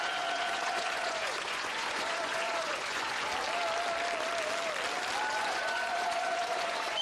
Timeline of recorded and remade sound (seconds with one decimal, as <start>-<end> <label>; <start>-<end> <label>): 0.0-3.3 remade; 3.3-5.3 recorded; 5.3-7.0 remade